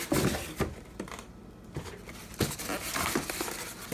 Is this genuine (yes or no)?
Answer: yes